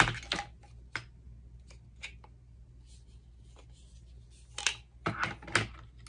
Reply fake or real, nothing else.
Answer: real